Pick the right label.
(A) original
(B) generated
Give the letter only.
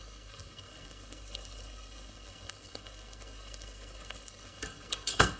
B